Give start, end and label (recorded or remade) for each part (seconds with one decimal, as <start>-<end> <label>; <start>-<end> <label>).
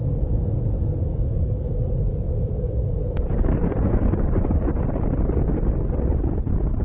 0.0-3.6 recorded; 3.6-4.8 remade; 4.8-6.8 recorded